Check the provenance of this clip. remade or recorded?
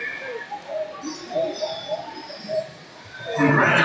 recorded